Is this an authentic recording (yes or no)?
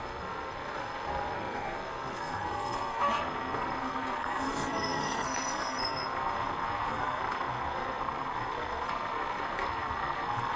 no